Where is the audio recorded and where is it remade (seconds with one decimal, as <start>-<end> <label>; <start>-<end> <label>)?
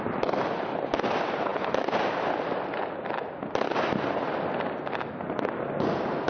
0.0-6.3 recorded